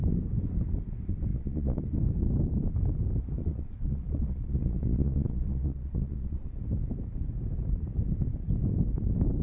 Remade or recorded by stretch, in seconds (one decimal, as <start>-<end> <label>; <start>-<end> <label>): 0.0-1.3 recorded; 1.3-1.8 remade; 1.8-3.4 recorded; 3.4-6.5 remade; 6.5-9.4 recorded